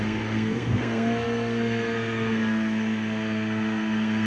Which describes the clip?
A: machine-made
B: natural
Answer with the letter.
A